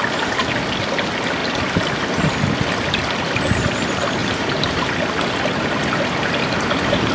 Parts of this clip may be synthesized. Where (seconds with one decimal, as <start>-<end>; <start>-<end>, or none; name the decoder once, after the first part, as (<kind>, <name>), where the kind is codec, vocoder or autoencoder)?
4.2-4.9 (vocoder, BigVGAN v2); 6.2-7.1